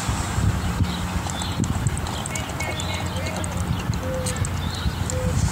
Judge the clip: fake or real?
real